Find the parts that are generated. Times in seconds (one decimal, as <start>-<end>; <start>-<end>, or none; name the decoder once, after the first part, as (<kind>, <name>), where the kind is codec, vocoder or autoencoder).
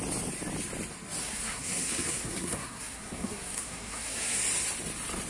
1.2-4.4 (codec, SNAC)